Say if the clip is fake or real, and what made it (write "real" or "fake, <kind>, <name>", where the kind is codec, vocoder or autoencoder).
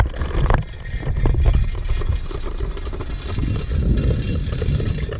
real